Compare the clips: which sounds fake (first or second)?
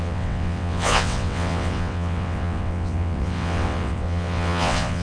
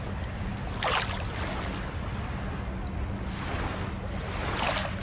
first